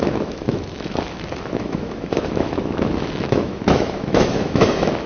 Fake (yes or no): yes